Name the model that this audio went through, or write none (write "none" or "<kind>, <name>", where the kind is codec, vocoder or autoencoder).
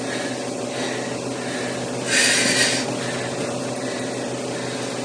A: none